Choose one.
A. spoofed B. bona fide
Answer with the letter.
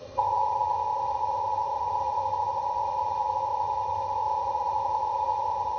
A